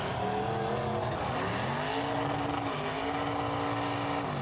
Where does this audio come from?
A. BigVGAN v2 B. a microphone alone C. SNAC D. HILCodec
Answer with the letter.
B